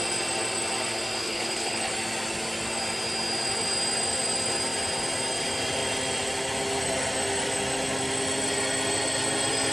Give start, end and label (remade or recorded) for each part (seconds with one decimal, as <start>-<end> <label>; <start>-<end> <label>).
0.0-1.2 recorded; 1.2-1.9 remade; 1.9-9.7 recorded